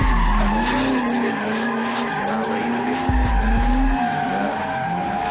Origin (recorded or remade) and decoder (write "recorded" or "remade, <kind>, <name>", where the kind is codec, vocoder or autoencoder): recorded